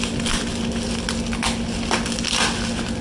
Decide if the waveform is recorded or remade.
recorded